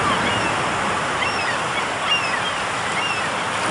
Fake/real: real